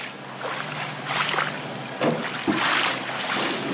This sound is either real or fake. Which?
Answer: real